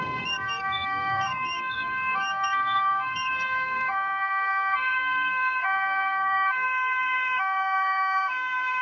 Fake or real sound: fake